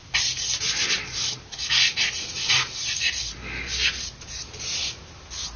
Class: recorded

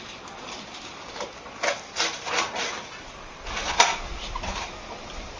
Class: recorded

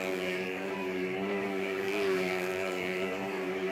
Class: remade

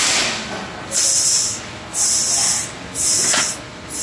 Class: recorded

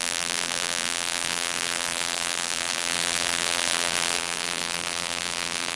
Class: remade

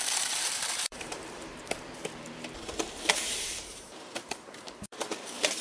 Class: remade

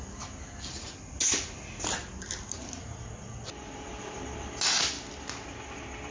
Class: recorded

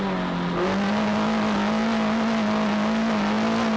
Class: recorded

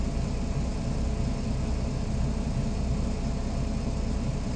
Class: recorded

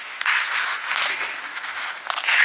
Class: recorded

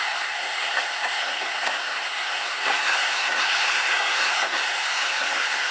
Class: remade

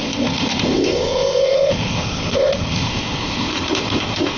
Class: remade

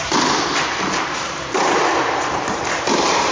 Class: remade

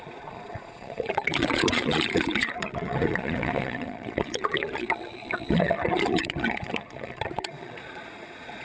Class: remade